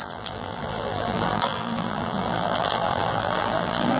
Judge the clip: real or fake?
fake